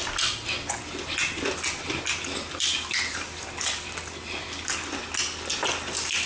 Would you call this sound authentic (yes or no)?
yes